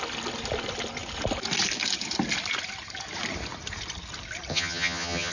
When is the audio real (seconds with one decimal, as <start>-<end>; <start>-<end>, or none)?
0.0-4.5